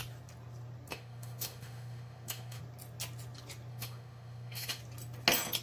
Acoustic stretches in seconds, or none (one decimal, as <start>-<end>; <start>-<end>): 0.0-0.9; 2.6-3.7; 4.8-5.6

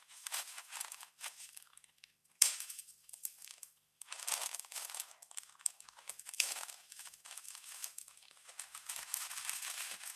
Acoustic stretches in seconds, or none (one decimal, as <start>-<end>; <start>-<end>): none

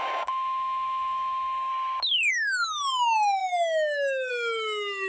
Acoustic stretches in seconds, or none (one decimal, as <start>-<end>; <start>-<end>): 1.7-2.3

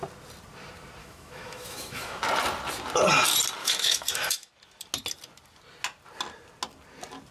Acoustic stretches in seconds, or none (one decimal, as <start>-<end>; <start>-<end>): 0.0-1.0; 2.2-3.6; 4.5-7.3

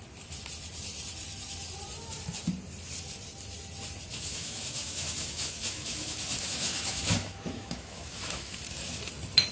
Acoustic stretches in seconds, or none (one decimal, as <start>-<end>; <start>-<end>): 0.0-4.1; 9.0-9.5

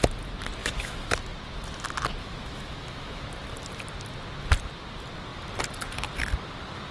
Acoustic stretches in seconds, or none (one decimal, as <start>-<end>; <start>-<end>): 0.0-0.6; 1.2-2.2; 3.2-6.9